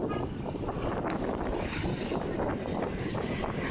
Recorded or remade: recorded